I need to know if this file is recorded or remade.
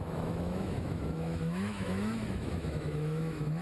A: remade